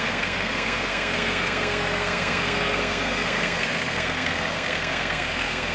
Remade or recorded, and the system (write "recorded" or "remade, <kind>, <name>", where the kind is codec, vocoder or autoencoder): remade, codec, SNAC